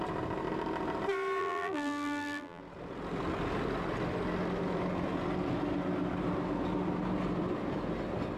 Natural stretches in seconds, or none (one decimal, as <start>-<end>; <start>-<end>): 0.0-1.4; 2.6-8.4